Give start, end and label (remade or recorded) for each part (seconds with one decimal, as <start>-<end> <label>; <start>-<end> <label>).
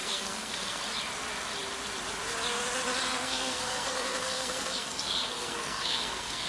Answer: 0.0-0.8 remade; 0.8-3.1 recorded; 3.1-6.5 remade